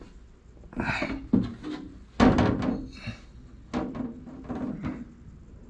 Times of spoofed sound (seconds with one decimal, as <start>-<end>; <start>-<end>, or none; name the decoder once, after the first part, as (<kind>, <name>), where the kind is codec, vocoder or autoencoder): none